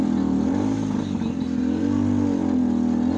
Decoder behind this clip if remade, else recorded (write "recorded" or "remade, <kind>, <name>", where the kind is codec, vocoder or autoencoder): recorded